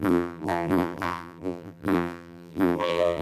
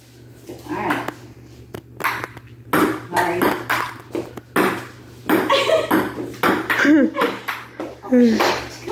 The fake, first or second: first